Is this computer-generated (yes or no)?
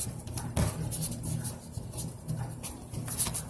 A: no